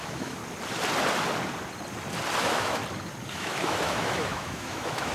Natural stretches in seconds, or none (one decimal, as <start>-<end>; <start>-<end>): 0.4-2.4; 2.8-3.3